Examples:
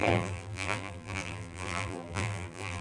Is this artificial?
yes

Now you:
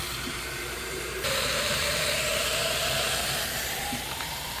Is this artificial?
yes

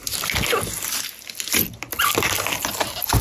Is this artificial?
no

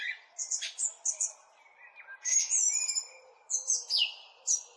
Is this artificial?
no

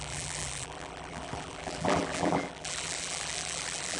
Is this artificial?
yes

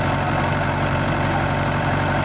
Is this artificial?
yes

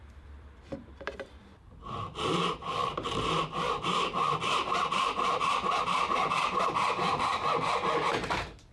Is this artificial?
yes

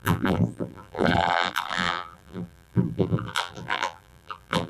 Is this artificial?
yes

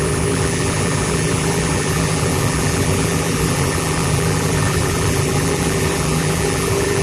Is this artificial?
yes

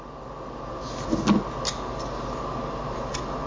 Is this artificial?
no